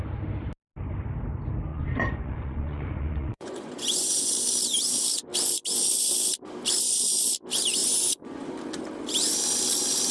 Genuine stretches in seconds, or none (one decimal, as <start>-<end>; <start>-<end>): 0.0-1.7; 4.3-7.8; 8.4-10.1

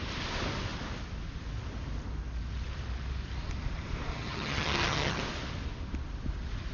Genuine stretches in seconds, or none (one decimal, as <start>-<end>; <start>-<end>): 0.0-4.1; 5.2-6.7

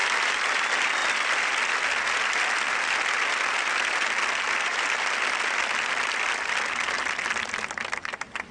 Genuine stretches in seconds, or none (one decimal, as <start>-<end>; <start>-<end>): 0.0-8.5

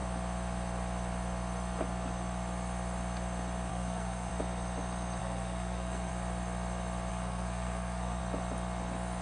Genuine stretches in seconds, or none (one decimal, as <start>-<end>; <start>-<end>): 0.0-3.7; 4.3-5.2; 6.1-7.1; 8.2-9.2